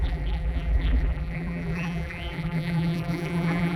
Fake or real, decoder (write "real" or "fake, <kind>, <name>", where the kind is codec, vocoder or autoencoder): fake, vocoder, BigVGAN v2